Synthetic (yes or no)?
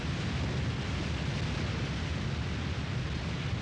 no